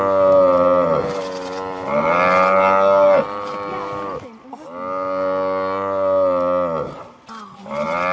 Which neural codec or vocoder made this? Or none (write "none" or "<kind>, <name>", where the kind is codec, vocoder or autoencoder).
none